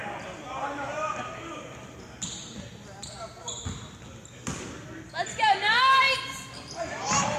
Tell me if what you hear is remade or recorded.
recorded